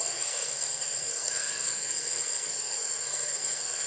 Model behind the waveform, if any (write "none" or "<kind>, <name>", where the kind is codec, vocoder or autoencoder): codec, SNAC